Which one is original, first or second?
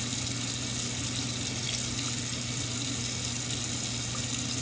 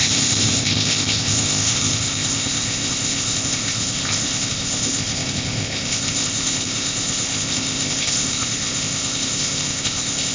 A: first